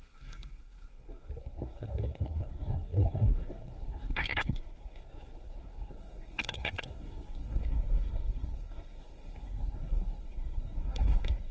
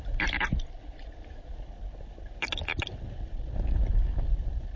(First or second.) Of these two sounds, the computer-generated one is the first